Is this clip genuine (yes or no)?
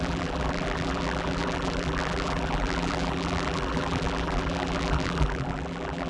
no